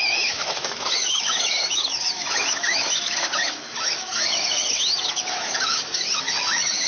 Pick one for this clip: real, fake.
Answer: fake